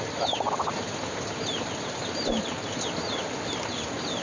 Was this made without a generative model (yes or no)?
yes